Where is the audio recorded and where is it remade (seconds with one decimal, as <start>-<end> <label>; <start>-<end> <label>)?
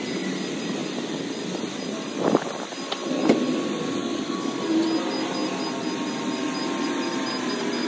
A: 0.0-4.0 recorded; 4.0-4.6 remade; 4.6-7.9 recorded